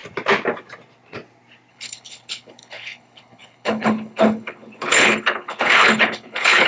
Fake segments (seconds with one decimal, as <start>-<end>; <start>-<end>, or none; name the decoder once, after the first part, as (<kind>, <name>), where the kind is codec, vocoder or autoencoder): 1.7-6.7 (codec, HILCodec)